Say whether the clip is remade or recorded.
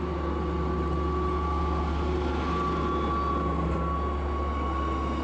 recorded